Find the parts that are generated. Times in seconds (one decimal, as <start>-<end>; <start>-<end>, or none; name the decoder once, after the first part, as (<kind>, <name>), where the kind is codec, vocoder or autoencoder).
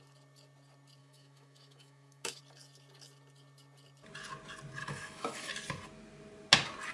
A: 1.0-2.4 (autoencoder, DAC-VAE); 4.8-5.5